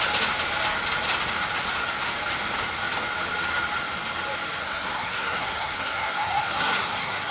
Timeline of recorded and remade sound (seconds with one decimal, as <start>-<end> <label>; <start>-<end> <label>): 0.0-4.6 recorded; 4.6-7.3 remade